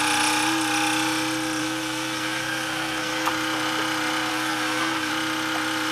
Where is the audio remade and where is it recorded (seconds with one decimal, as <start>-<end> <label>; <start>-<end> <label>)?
0.0-1.6 recorded; 1.6-3.3 remade; 3.3-4.3 recorded; 4.3-5.1 remade; 5.1-5.9 recorded